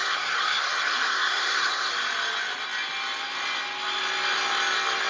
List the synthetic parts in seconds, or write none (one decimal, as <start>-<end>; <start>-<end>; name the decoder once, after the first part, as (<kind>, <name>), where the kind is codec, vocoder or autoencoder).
0.0-1.9 (codec, SNAC)